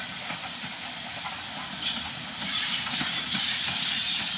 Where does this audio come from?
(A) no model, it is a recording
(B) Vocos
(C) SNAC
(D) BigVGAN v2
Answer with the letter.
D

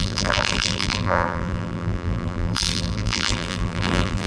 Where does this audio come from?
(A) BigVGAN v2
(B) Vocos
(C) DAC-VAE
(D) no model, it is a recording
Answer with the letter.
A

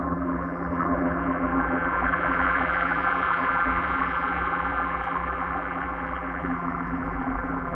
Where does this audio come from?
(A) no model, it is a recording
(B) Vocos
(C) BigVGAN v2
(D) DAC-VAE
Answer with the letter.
C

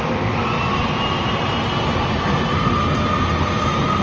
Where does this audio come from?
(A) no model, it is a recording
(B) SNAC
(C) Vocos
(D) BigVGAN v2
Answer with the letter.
A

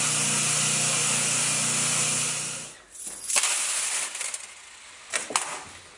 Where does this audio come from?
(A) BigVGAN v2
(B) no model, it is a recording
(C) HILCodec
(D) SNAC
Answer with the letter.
B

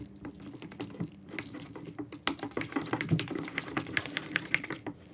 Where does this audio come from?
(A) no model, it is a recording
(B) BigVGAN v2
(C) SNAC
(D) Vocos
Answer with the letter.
A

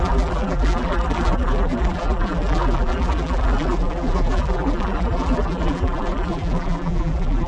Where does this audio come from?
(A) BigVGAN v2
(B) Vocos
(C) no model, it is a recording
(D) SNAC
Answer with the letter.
A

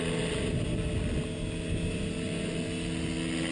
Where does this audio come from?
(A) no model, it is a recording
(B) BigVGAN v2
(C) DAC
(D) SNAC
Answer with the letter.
A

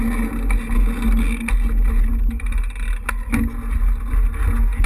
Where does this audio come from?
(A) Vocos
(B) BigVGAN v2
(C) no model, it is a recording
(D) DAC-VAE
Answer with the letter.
C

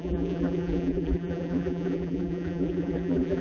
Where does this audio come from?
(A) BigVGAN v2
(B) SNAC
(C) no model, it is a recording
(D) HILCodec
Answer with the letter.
A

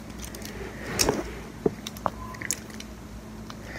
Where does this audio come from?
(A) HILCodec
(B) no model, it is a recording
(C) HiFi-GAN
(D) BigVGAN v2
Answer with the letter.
B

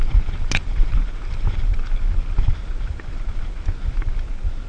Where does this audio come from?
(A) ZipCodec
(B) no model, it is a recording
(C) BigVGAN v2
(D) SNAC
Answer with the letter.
B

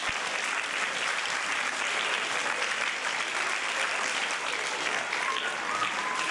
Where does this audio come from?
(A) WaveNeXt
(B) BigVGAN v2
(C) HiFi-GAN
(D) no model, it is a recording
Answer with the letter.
B